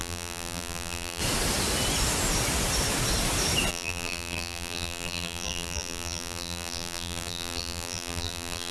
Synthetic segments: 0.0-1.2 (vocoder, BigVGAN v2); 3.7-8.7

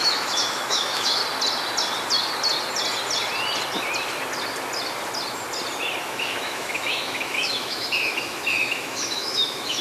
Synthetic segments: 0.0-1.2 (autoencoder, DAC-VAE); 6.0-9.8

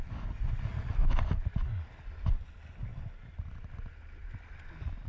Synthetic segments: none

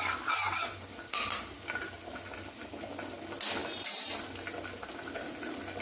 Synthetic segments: none

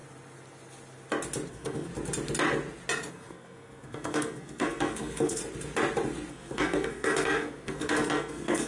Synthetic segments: 1.5-1.9 (codec, SNAC); 3.1-5.4; 6.3-8.7

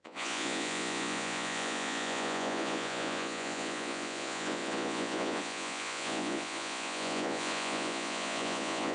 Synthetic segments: 0.0-8.9 (vocoder, Vocos)

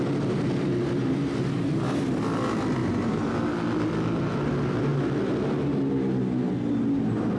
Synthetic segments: 2.8-3.3 (vocoder, BigVGAN v2)